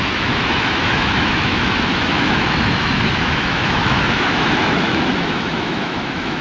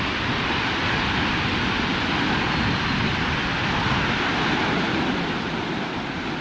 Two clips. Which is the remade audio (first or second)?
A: first